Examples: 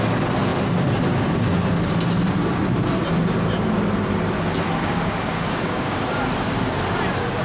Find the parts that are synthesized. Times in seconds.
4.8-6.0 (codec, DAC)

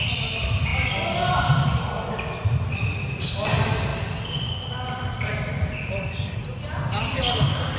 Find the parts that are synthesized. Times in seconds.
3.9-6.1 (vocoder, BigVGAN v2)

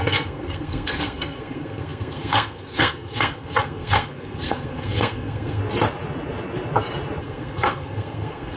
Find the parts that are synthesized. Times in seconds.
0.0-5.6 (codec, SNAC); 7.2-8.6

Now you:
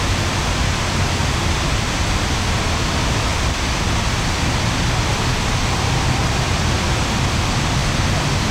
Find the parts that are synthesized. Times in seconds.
none